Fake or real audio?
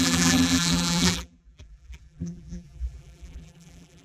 fake